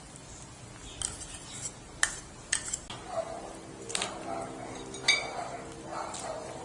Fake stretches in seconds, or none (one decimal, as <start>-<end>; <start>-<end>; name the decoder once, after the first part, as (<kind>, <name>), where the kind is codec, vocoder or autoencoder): none